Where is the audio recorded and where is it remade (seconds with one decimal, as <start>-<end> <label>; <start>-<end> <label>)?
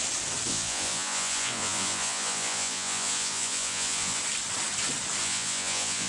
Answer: 0.0-0.5 recorded; 0.5-4.2 remade; 4.2-5.2 recorded; 5.2-6.1 remade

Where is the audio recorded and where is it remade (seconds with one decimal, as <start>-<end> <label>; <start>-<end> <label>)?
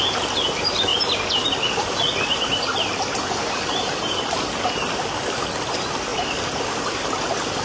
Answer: 0.0-0.9 recorded; 0.9-5.5 remade; 5.5-7.6 recorded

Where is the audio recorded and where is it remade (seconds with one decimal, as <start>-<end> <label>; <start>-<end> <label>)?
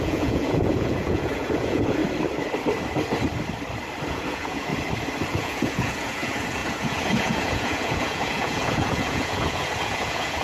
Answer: 0.0-2.0 remade; 2.0-4.1 recorded; 4.1-4.7 remade; 4.7-5.3 recorded; 5.3-10.4 remade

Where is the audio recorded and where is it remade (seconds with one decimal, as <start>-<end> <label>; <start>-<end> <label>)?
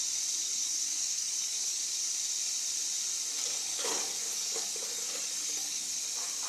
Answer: 0.0-0.4 recorded; 0.4-1.8 remade; 1.8-3.7 recorded; 3.7-5.9 remade; 5.9-6.5 recorded